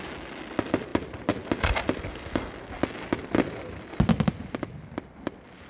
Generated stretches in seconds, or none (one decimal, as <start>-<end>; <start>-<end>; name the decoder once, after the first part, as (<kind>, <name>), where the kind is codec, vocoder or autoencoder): none